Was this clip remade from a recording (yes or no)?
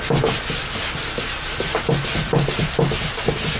no